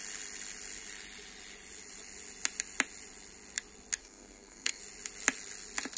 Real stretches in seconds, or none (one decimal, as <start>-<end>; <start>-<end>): 0.0-4.0; 4.8-6.0